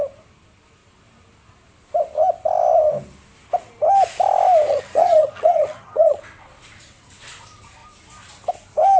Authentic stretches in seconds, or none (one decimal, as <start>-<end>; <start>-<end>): 0.0-4.7; 6.2-9.0